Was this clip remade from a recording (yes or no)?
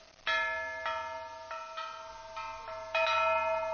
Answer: no